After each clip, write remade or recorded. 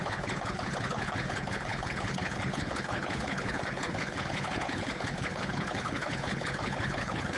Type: remade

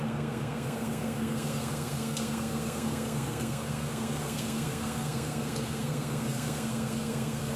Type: remade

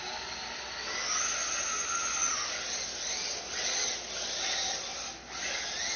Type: recorded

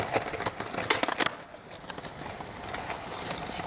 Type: recorded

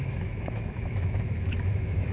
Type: remade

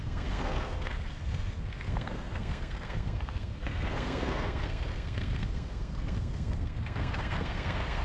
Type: remade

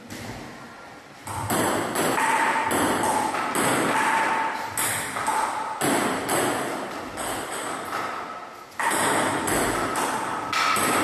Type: recorded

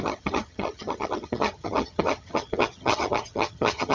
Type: remade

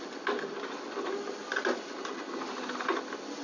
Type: recorded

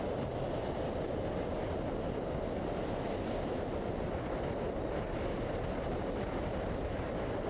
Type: recorded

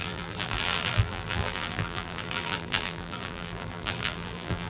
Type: remade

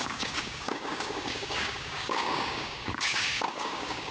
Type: remade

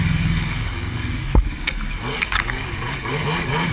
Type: remade